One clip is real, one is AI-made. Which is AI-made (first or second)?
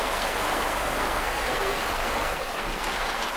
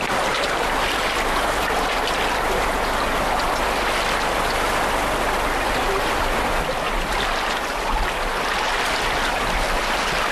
first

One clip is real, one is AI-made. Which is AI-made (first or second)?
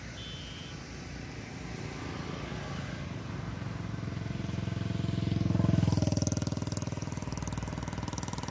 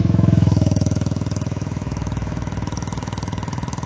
second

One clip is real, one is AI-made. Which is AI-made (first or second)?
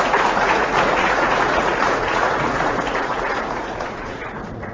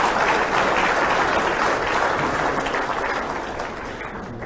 first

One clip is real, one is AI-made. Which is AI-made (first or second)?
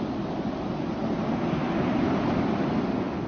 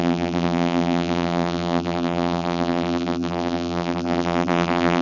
second